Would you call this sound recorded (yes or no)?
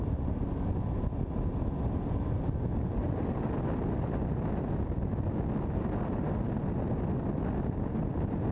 yes